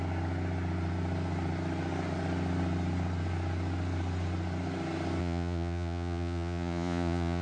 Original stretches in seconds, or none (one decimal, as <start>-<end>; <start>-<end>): 0.0-5.2